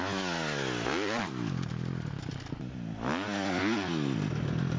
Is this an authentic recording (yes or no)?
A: yes